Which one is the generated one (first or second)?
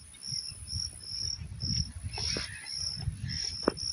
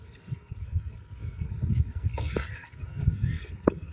second